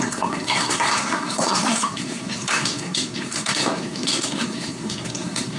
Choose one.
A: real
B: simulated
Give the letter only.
B